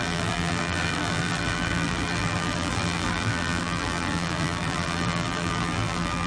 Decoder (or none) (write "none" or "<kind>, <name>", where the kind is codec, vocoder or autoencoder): vocoder, BigVGAN v2